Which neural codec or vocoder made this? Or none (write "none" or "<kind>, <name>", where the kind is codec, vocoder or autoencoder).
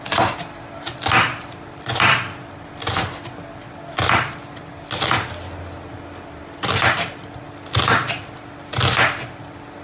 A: none